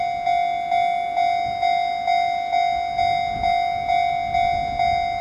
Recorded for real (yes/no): yes